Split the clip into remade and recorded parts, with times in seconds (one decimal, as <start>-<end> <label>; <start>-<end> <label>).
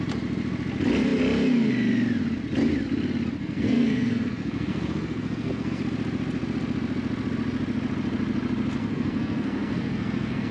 0.0-3.4 recorded; 3.4-5.8 remade; 5.8-8.8 recorded; 8.8-10.5 remade